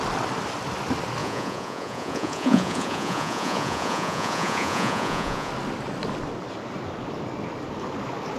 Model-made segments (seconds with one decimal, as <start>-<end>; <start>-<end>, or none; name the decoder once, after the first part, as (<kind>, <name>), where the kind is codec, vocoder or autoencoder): 1.2-5.5 (vocoder, Vocos)